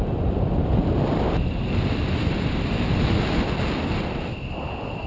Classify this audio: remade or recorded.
recorded